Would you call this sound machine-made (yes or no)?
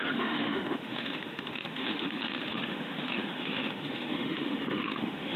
yes